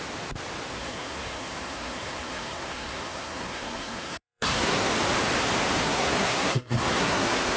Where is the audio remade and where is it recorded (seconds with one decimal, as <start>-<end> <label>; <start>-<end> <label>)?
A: 0.0-0.7 recorded; 0.7-4.9 remade; 4.9-5.8 recorded; 5.8-7.6 remade